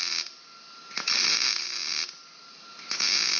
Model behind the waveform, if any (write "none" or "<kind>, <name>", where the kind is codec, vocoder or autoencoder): none